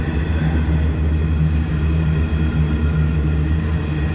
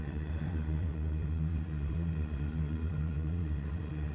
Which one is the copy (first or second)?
second